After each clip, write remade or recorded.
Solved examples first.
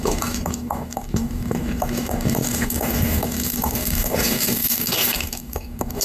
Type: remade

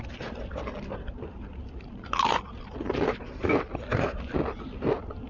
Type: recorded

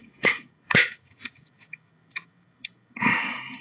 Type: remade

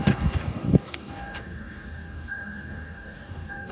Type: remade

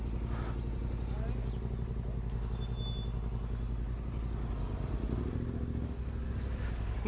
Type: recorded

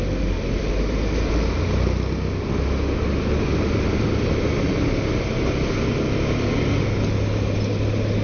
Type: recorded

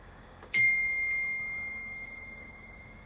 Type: remade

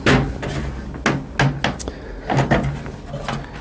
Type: recorded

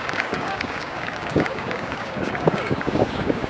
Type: remade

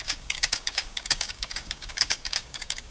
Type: remade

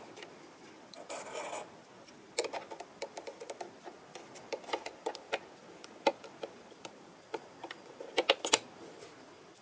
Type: recorded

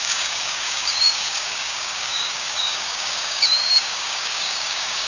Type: remade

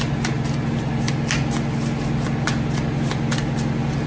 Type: recorded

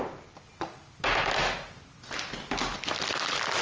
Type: recorded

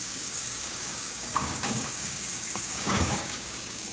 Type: remade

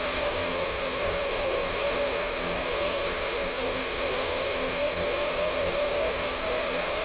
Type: remade